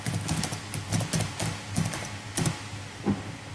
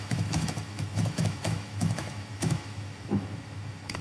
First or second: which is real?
first